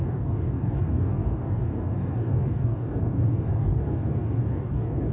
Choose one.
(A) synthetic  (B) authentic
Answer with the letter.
A